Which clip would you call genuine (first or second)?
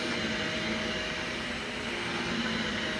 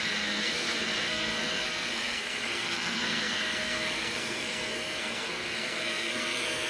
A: first